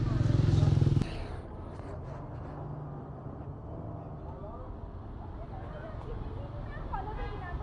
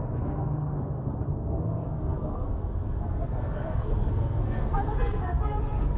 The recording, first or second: first